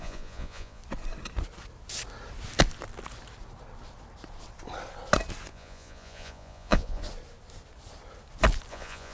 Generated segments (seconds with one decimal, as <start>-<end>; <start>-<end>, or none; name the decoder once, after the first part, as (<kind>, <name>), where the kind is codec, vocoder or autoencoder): 0.0-0.8 (vocoder, Vocos); 5.5-7.0; 8.7-9.1